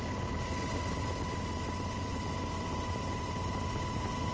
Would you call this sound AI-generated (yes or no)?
no